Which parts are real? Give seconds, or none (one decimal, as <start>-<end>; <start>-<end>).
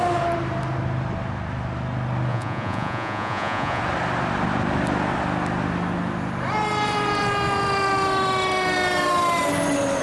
0.0-2.3; 3.8-10.0